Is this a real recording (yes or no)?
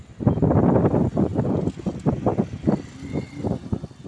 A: yes